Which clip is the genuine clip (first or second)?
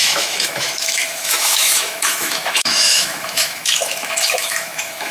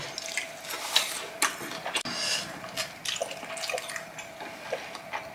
second